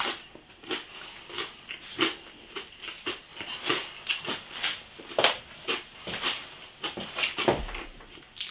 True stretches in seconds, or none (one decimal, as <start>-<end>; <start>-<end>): 3.3-4.1